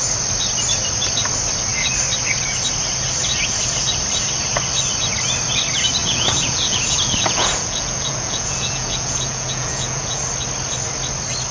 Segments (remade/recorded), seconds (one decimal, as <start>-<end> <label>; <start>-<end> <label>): 0.0-6.0 recorded; 6.0-10.2 remade; 10.2-11.5 recorded